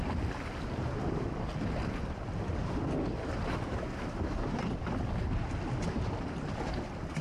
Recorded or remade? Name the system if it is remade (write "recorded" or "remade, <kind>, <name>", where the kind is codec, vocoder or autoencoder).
recorded